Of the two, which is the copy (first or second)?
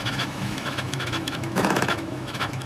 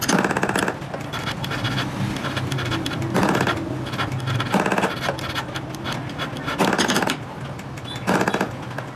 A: first